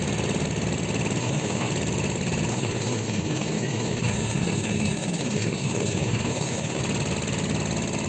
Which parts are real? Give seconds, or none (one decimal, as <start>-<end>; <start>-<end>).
0.0-1.2; 1.7-2.5; 6.8-8.1